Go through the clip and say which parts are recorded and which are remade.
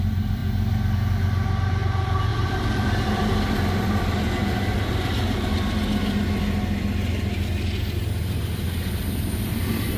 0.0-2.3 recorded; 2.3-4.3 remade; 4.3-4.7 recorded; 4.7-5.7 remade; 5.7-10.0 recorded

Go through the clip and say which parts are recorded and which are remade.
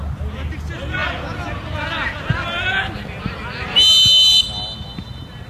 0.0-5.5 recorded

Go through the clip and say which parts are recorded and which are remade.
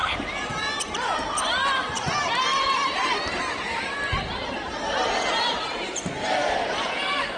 0.0-2.5 recorded; 2.5-6.5 remade; 6.5-7.4 recorded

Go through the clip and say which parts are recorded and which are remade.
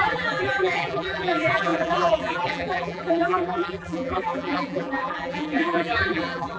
0.0-6.6 remade